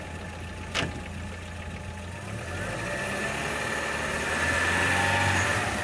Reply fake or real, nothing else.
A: real